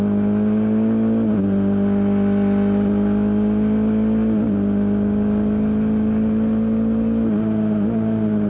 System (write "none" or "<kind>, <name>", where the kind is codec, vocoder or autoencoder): none